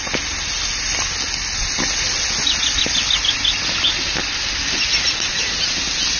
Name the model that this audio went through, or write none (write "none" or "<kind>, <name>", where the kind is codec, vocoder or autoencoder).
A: none